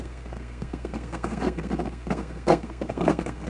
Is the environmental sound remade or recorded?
remade